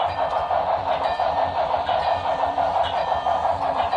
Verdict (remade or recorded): remade